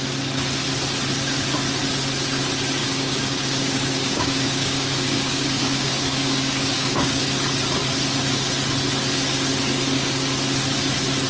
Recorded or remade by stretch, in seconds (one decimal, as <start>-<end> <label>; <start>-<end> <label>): 0.0-2.8 recorded; 2.8-7.2 remade; 7.2-11.3 recorded

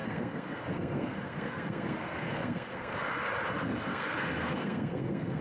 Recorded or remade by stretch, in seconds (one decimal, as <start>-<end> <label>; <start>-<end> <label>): 0.0-3.1 remade; 3.1-3.9 recorded; 3.9-5.4 remade

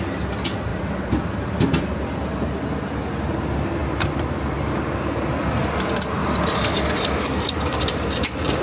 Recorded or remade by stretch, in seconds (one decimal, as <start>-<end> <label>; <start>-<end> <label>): 0.0-0.7 recorded; 0.7-2.6 remade; 2.6-3.8 recorded; 3.8-4.7 remade; 4.7-6.2 recorded; 6.2-8.6 remade

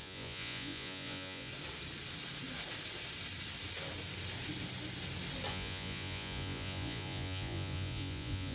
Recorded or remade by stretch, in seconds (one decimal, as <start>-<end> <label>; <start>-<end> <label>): 0.0-1.5 remade; 1.5-5.5 recorded; 5.5-8.5 remade

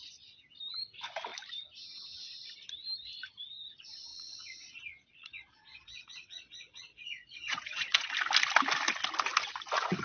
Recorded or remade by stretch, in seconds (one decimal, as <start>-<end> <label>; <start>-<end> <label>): 0.0-4.1 recorded; 4.1-8.1 remade; 8.1-10.0 recorded